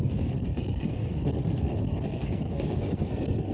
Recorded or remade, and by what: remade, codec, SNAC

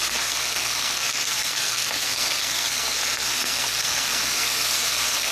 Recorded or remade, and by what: remade, codec, SNAC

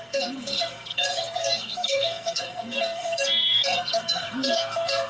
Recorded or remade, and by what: remade, codec, SNAC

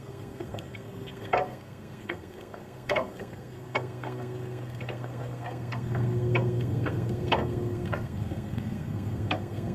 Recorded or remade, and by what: remade, codec, SNAC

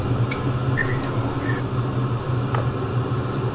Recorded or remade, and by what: recorded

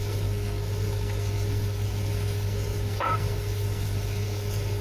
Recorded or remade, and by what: remade, codec, SNAC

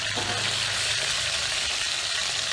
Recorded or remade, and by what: recorded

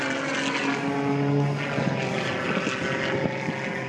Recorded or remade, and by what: recorded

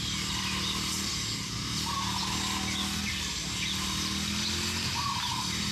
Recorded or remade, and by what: recorded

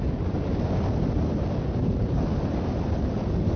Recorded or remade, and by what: recorded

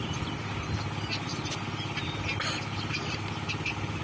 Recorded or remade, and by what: recorded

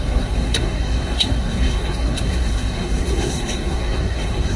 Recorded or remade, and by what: remade, codec, SNAC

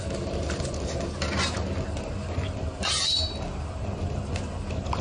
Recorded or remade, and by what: recorded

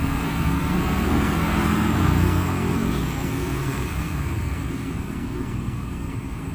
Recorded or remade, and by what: remade, codec, SNAC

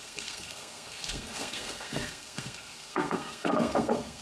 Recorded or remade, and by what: remade, codec, SNAC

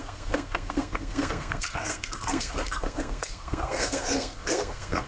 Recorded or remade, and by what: remade, codec, SNAC